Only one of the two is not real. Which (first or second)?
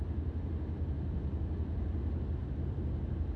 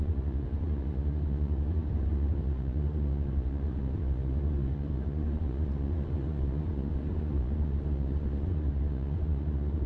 second